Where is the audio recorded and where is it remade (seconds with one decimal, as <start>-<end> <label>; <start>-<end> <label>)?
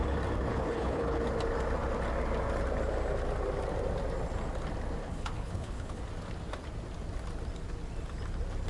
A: 0.0-0.5 recorded; 0.5-1.2 remade; 1.2-5.0 recorded; 5.0-6.0 remade; 6.0-8.7 recorded